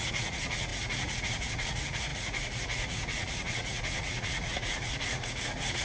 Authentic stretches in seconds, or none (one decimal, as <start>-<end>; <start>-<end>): none